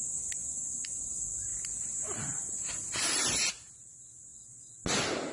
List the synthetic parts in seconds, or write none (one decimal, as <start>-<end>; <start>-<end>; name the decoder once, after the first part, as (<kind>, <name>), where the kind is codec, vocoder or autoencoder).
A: none